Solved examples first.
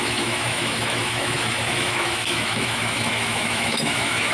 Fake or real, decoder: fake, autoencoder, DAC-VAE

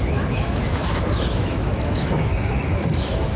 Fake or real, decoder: fake, autoencoder, DAC-VAE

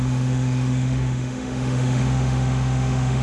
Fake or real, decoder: fake, autoencoder, DAC-VAE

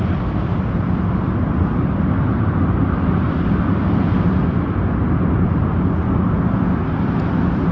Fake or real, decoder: real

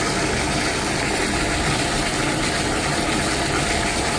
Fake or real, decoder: real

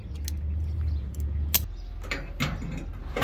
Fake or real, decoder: real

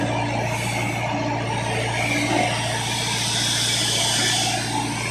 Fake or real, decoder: real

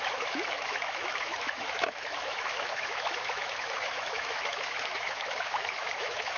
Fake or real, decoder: fake, autoencoder, DAC-VAE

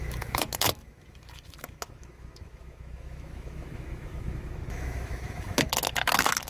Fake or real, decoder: fake, autoencoder, DAC-VAE